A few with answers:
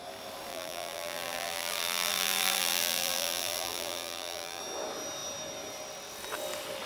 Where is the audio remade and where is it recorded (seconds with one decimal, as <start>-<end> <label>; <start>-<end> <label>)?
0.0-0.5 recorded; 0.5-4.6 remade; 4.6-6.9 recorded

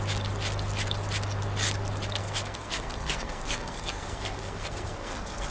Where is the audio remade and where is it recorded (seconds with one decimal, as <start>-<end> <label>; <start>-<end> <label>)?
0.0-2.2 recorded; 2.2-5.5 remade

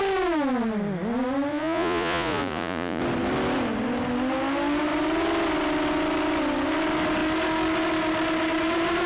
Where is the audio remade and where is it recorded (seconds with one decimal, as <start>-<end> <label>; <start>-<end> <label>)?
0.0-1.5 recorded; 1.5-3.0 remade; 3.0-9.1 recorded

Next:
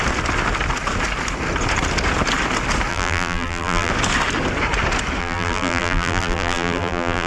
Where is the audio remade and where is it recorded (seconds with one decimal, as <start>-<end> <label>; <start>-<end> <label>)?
0.0-2.9 recorded; 2.9-3.9 remade; 3.9-5.2 recorded; 5.2-7.3 remade